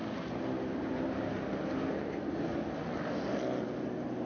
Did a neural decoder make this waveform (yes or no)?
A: no